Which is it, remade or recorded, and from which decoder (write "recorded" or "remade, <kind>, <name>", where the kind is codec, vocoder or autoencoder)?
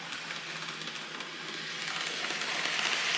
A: recorded